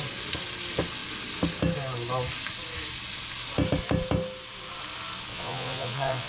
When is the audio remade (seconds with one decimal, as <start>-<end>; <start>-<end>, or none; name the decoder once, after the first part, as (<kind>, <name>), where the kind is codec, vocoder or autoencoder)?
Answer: 5.3-6.3 (vocoder, Vocos)